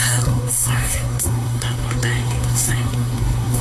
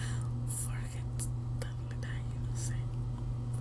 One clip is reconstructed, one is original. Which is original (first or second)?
second